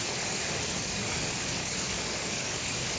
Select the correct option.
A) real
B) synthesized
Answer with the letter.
B